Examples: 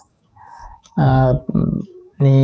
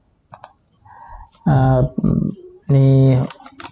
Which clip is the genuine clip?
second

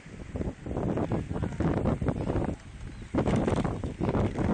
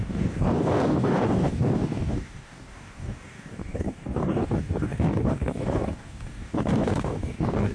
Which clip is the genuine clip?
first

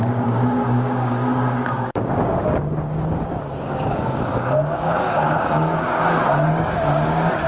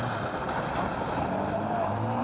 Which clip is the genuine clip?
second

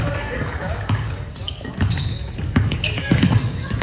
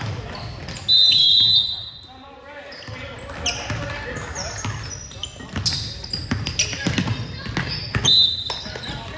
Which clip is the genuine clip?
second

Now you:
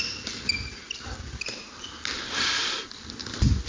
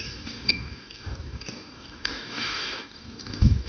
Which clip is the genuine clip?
first